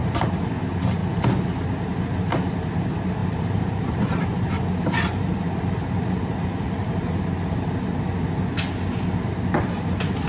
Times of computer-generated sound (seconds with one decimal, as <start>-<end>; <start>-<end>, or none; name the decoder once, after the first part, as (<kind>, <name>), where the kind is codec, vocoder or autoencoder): 0.0-0.6 (vocoder, BigVGAN v2); 3.2-7.2